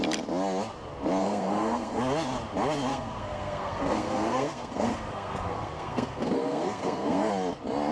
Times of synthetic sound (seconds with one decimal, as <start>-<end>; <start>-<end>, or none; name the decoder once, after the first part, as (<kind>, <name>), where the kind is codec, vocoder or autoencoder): 1.2-2.0 (codec, SNAC); 2.9-7.3